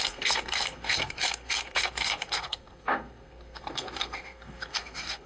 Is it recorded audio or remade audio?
remade